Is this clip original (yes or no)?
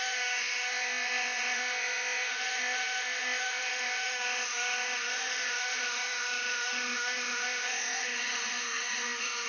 no